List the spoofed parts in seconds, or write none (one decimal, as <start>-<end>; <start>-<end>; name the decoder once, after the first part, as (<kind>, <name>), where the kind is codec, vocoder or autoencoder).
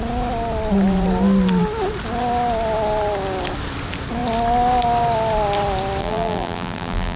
6.0-7.2 (vocoder, BigVGAN v2)